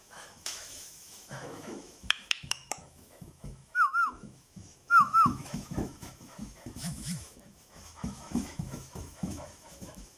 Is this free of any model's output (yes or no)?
no